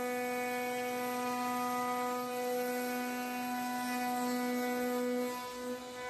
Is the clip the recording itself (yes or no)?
yes